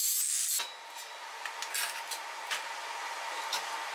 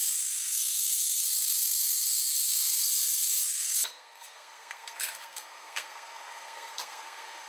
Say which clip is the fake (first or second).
second